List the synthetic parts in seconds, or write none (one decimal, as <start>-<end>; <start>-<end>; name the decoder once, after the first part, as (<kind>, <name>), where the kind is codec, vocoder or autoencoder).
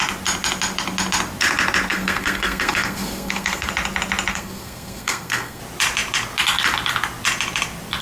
1.9-3.7 (codec, SNAC); 4.3-5.6